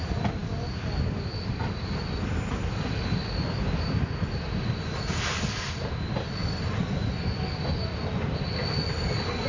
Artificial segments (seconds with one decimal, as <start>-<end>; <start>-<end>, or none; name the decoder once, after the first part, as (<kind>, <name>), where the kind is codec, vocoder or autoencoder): none